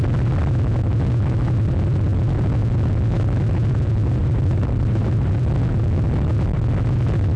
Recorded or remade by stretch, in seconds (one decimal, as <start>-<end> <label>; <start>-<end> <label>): 0.0-4.2 recorded; 4.2-5.4 remade; 5.4-7.4 recorded